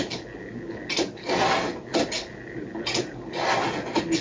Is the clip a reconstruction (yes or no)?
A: no